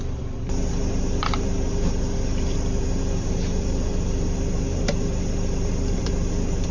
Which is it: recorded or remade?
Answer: remade